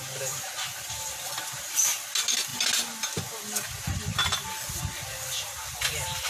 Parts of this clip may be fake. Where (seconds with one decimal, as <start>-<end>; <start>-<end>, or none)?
none